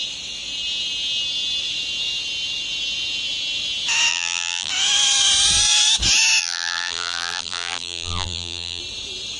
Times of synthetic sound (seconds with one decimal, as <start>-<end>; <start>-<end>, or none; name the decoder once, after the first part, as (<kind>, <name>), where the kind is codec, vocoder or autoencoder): 4.1-4.7 (vocoder, BigVGAN v2); 6.4-8.8